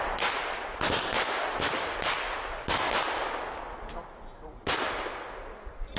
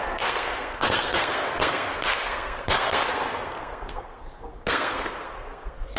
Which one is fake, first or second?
second